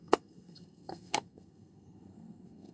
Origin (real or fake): fake